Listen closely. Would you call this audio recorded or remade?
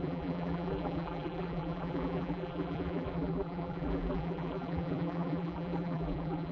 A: remade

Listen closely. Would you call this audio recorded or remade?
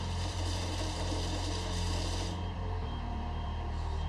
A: remade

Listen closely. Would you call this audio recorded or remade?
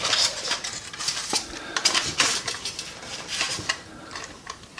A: remade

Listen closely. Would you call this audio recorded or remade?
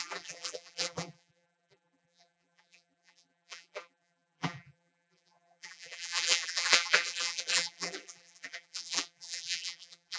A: remade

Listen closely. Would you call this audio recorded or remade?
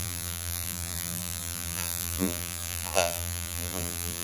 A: remade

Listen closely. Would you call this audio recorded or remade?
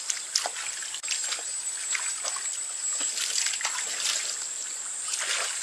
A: recorded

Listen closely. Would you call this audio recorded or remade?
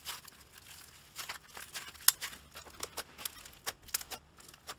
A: recorded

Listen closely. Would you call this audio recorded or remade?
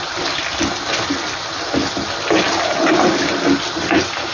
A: recorded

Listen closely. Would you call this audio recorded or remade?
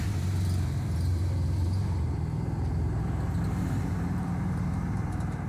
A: remade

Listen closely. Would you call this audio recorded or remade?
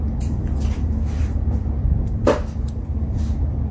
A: remade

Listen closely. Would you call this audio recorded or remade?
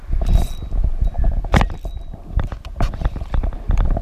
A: recorded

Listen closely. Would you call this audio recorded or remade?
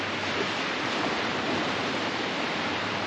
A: remade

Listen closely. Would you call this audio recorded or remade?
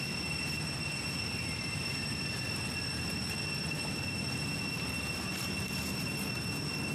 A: recorded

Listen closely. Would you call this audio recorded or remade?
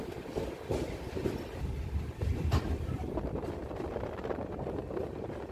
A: remade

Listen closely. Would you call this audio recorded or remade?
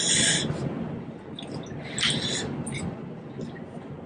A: recorded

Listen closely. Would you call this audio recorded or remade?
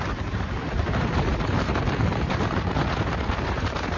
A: remade